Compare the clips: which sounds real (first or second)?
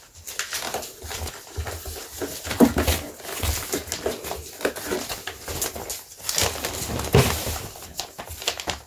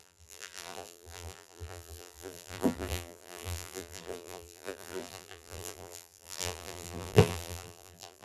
first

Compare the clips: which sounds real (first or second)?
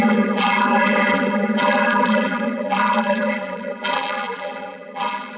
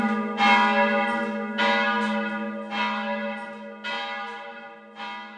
second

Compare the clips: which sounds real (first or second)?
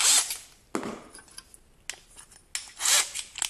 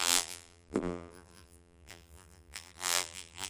first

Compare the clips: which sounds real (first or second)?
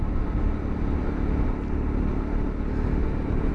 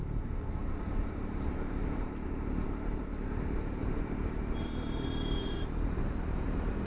first